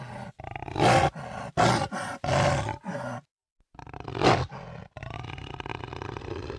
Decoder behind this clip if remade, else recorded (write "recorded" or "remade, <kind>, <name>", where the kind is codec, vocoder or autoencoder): recorded